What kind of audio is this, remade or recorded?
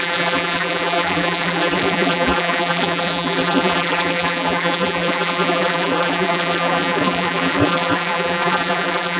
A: remade